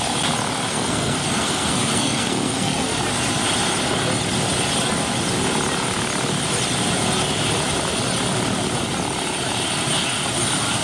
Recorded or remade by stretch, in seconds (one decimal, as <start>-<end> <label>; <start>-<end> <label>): 0.0-0.7 recorded; 0.7-3.0 remade; 3.0-10.8 recorded